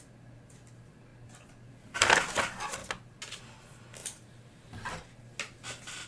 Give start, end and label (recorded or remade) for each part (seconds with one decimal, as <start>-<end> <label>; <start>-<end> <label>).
0.0-6.1 recorded